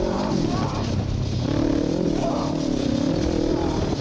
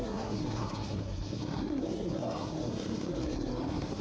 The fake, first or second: second